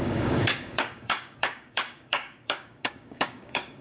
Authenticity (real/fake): fake